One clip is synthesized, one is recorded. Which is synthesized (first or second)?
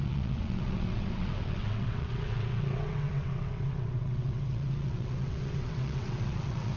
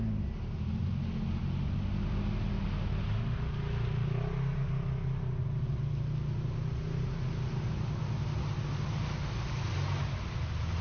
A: first